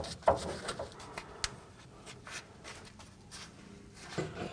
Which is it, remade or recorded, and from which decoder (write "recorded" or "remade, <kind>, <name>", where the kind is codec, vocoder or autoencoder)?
recorded